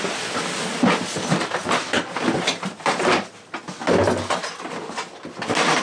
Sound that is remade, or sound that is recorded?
recorded